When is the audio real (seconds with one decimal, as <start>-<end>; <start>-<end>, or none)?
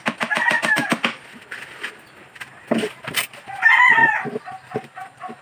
0.0-2.2; 2.9-4.0; 4.8-5.4